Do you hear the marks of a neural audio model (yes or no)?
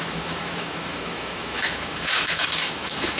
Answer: yes